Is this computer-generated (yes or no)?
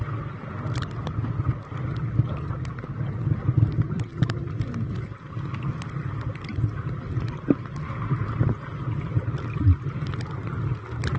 no